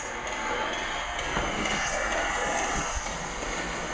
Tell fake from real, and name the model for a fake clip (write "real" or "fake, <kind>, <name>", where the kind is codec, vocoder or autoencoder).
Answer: real